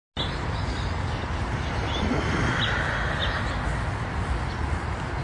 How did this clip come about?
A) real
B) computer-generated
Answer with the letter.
A